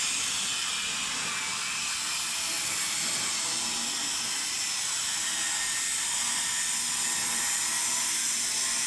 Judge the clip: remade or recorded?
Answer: recorded